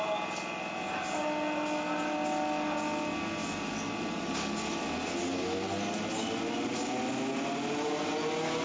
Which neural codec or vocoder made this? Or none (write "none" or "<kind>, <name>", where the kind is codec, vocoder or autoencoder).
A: none